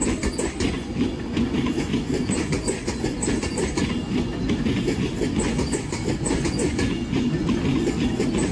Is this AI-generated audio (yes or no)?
yes